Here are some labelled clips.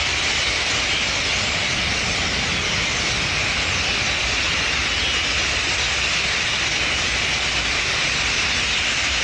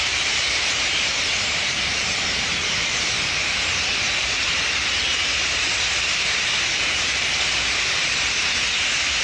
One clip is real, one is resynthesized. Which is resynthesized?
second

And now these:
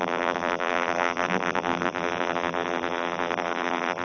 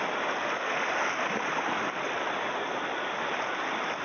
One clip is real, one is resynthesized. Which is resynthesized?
first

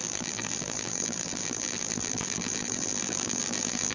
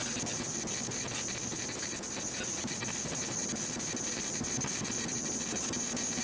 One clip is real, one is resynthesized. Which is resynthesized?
first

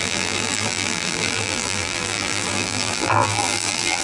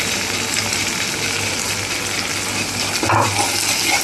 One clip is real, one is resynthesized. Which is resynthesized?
first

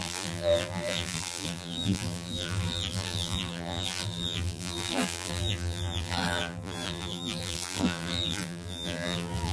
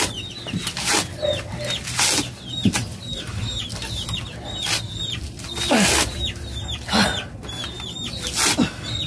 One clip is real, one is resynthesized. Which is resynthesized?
first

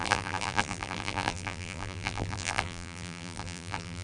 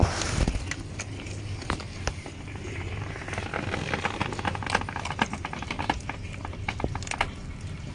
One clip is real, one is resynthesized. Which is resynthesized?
first